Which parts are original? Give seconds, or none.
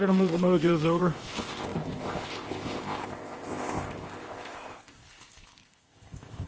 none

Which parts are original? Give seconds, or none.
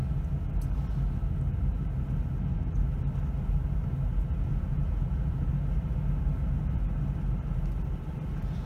0.0-4.5; 5.5-8.7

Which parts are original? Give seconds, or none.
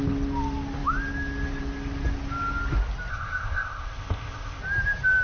0.0-3.1; 4.6-5.2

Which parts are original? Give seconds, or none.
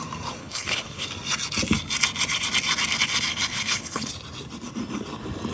0.0-0.4; 1.1-3.5; 4.1-5.5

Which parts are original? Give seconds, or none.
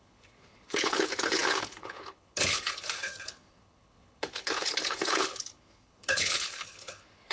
none